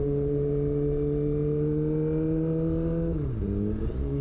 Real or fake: real